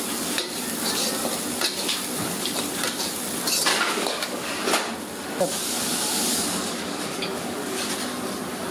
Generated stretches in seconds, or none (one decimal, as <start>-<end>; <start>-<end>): 3.7-4.5; 5.6-7.9